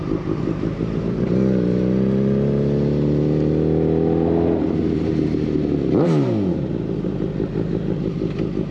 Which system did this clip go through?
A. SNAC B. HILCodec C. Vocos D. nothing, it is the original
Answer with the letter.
D